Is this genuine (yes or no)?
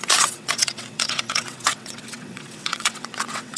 no